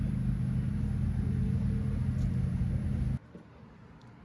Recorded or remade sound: recorded